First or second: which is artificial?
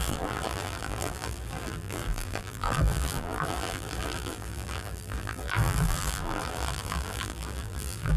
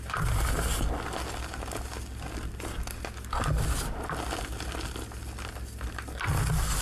first